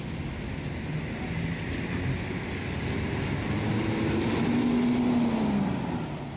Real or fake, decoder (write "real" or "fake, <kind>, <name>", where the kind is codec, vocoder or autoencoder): real